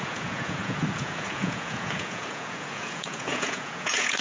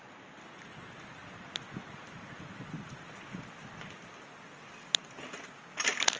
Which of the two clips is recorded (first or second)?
second